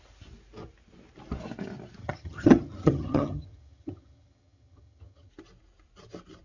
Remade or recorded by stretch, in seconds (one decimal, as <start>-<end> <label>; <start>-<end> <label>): 0.0-2.0 recorded; 2.0-5.3 remade; 5.3-6.4 recorded

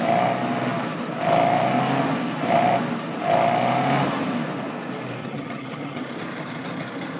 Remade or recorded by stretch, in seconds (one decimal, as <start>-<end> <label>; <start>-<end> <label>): 0.0-5.2 recorded; 5.2-6.0 remade; 6.0-7.2 recorded